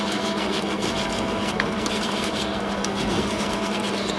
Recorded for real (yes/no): no